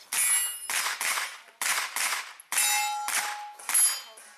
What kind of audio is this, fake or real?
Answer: real